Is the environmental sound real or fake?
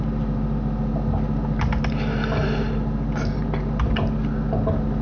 real